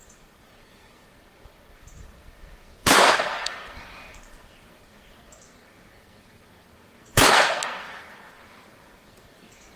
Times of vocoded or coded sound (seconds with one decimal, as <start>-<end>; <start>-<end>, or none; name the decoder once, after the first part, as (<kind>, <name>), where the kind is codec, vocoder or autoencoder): 0.0-9.8 (codec, SNAC)